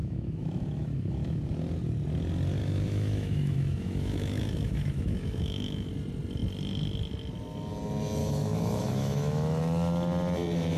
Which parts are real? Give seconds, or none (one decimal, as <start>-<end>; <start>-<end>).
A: 1.4-2.6; 5.9-8.2; 9.6-10.8